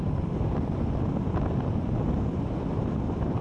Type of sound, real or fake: real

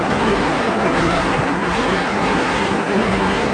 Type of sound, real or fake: fake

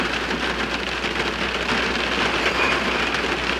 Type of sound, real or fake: real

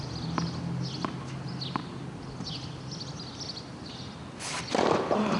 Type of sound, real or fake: real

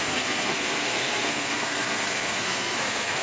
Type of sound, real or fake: fake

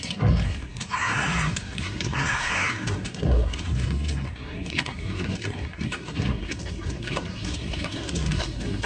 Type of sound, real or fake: fake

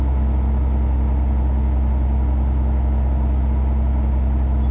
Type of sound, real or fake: real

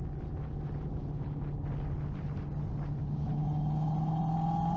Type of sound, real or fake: real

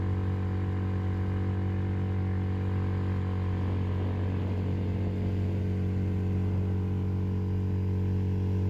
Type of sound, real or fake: real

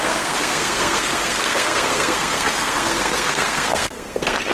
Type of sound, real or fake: fake